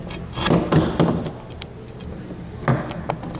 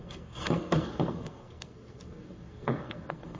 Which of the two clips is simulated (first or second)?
second